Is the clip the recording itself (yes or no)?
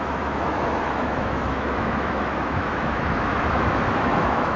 no